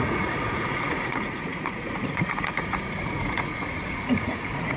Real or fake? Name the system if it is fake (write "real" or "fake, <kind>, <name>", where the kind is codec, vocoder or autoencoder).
fake, vocoder, Vocos